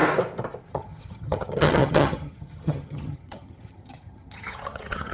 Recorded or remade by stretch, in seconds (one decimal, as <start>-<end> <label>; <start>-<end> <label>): 0.0-0.7 recorded; 0.7-5.1 remade